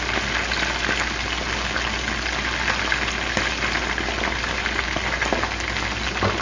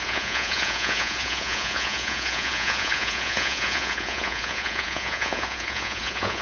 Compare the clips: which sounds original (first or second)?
first